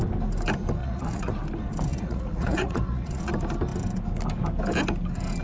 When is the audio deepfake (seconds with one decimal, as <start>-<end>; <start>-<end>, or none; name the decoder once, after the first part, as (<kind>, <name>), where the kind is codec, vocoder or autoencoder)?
0.8-1.3 (vocoder, Vocos); 1.9-3.3